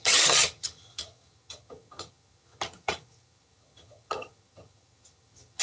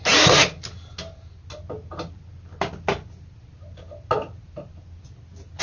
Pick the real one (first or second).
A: second